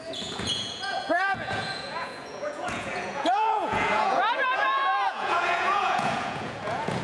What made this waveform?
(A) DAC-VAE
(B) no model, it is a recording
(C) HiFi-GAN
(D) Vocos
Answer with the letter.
D